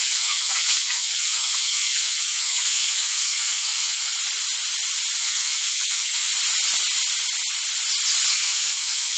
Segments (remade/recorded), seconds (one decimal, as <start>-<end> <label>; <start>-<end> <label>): 0.0-4.1 remade; 4.1-5.2 recorded; 5.2-6.3 remade; 6.3-8.3 recorded; 8.3-9.2 remade